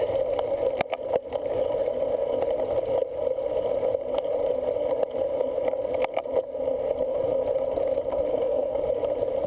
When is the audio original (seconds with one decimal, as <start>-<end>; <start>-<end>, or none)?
0.0-8.3; 8.8-9.5